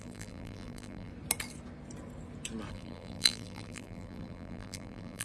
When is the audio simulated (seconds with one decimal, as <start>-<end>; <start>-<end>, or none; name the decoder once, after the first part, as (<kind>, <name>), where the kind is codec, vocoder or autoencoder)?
0.0-1.1 (vocoder, BigVGAN v2); 2.7-5.2